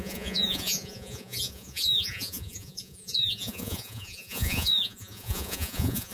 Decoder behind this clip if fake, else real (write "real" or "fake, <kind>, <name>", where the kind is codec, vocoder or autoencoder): fake, vocoder, Vocos